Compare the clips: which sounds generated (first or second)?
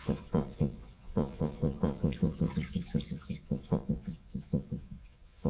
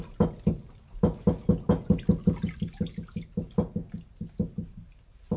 first